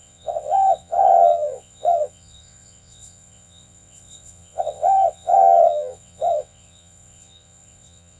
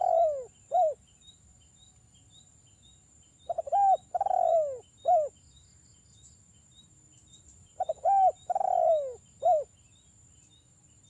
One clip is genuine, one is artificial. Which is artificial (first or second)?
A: first